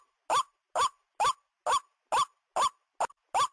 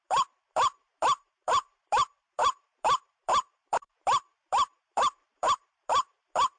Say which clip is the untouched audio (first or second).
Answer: first